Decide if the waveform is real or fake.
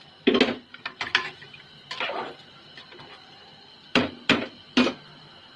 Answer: fake